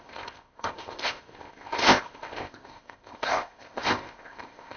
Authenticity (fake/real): fake